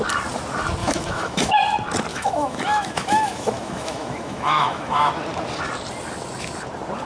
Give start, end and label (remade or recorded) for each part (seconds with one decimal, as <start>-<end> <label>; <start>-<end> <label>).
0.0-0.8 recorded; 0.8-1.5 remade; 1.5-2.1 recorded; 2.1-5.1 remade; 5.1-7.1 recorded